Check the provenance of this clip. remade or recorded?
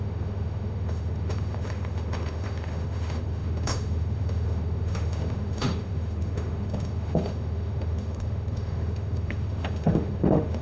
remade